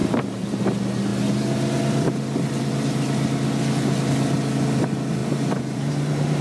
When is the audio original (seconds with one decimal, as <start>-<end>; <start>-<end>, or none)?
0.6-5.2